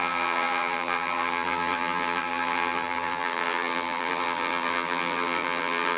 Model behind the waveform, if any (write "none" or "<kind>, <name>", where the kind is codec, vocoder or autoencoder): vocoder, BigVGAN v2